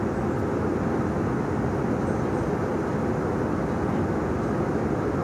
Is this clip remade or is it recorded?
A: recorded